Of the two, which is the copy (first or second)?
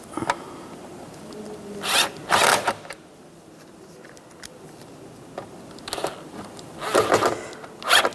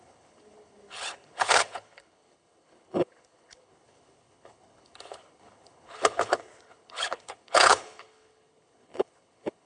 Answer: second